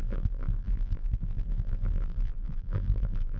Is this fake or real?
fake